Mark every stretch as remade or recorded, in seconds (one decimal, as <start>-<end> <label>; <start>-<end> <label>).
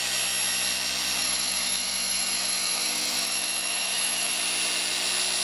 0.0-1.2 recorded; 1.2-4.4 remade; 4.4-5.4 recorded